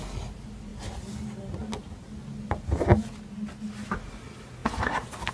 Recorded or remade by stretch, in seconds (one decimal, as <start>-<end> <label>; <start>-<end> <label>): 0.0-5.3 recorded